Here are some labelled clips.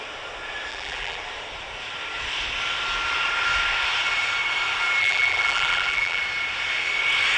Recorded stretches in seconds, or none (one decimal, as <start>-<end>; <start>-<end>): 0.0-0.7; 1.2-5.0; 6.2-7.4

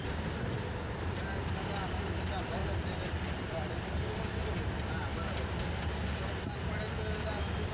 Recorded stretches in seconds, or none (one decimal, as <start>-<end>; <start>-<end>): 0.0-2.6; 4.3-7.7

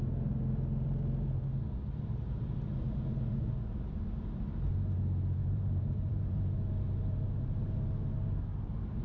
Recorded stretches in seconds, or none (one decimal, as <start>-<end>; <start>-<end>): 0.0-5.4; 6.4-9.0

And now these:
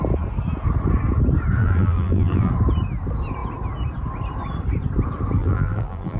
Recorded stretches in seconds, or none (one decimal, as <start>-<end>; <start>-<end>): 0.0-1.6; 2.5-5.4